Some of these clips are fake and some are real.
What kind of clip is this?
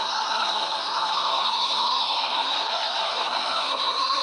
fake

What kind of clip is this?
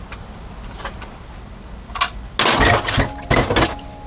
real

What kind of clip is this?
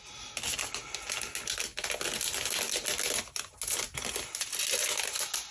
real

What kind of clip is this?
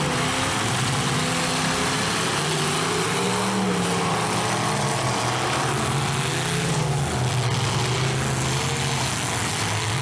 real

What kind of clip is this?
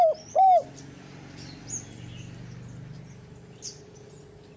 real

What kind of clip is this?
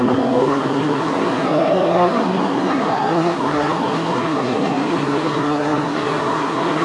fake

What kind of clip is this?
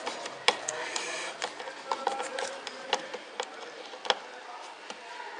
real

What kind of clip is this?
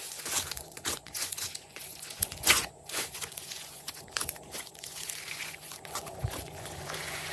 fake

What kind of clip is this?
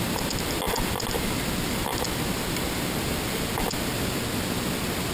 real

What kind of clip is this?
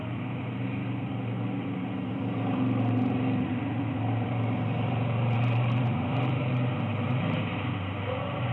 fake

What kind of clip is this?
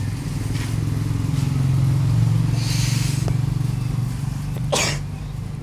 real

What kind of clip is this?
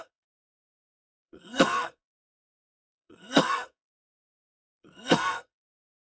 fake